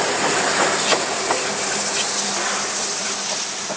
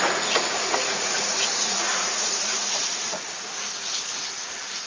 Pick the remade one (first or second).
second